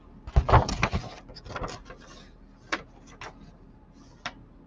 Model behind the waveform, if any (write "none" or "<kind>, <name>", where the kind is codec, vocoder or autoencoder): none